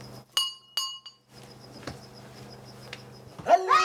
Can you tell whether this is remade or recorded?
recorded